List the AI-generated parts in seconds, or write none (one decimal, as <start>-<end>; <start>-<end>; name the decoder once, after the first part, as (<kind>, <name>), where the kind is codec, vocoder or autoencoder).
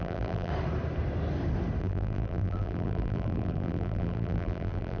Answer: 0.0-0.5 (vocoder, BigVGAN v2); 1.8-5.0